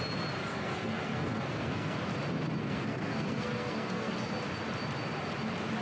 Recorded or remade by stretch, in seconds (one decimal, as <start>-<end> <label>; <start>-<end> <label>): 0.0-0.5 recorded; 0.5-2.0 remade; 2.0-2.6 recorded; 2.6-4.1 remade; 4.1-5.8 recorded